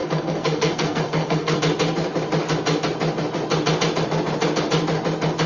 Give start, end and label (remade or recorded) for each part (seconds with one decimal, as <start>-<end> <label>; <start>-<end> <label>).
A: 0.0-1.6 remade; 1.6-5.5 recorded